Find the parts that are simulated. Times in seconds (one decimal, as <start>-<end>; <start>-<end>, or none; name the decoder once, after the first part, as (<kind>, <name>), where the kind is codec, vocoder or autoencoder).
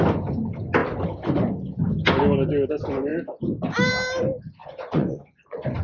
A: 4.6-5.8 (vocoder, Vocos)